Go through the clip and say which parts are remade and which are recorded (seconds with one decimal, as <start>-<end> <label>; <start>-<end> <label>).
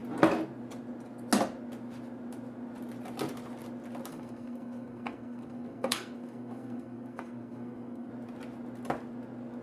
0.0-4.1 recorded; 4.1-8.1 remade; 8.1-9.6 recorded